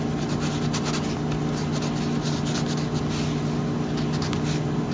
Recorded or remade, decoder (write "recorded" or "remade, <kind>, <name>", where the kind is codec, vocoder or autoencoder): recorded